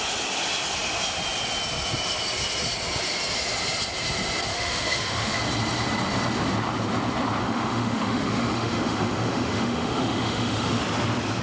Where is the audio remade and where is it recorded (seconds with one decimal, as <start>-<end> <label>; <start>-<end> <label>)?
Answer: 0.0-4.5 recorded; 4.5-5.4 remade; 5.4-7.4 recorded; 7.4-10.8 remade; 10.8-11.4 recorded

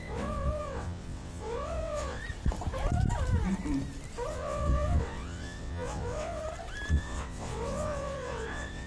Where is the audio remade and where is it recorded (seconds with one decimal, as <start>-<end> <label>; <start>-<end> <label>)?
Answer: 0.0-2.2 remade; 2.2-4.3 recorded; 4.3-6.4 remade; 6.4-6.9 recorded; 6.9-8.9 remade

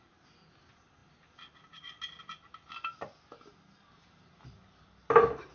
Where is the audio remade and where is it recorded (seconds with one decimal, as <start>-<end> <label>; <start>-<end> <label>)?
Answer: 0.0-5.5 recorded

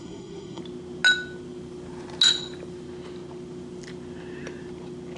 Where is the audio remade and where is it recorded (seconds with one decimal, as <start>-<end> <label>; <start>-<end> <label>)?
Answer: 0.0-0.6 remade; 0.6-5.2 recorded

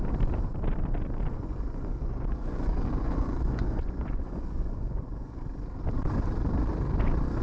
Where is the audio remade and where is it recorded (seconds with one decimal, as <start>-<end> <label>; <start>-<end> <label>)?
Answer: 0.0-1.4 recorded; 1.4-5.4 remade; 5.4-7.4 recorded